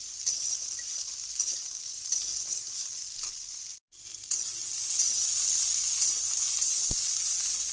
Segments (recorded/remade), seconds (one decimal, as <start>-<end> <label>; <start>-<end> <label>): 0.0-3.7 remade; 3.7-6.1 recorded; 6.1-7.7 remade